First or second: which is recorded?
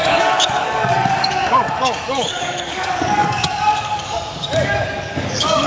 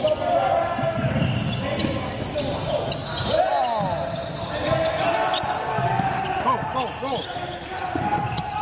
second